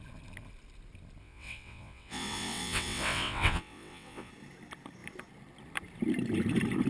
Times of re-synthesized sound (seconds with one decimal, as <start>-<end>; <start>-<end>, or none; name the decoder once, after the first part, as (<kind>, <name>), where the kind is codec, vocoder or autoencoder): 1.2-4.3 (vocoder, WaveNeXt)